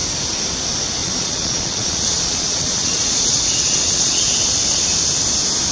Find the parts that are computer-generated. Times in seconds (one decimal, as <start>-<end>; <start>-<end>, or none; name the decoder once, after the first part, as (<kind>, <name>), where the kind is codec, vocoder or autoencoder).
1.0-4.2 (vocoder, Vocos)